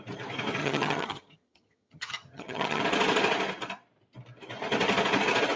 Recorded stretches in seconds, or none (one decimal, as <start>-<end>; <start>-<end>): 0.0-0.6; 2.8-5.6